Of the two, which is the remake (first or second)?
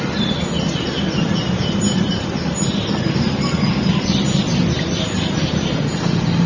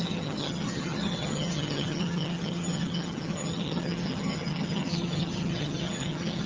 second